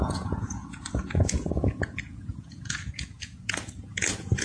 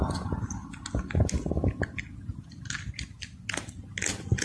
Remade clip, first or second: first